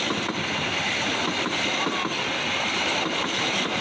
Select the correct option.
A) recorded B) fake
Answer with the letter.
A